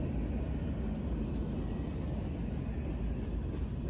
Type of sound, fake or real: real